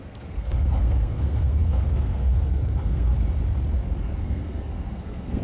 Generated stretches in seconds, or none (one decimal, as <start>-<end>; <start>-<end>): 0.0-3.1; 4.0-5.4